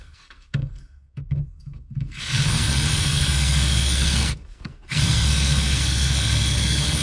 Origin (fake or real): fake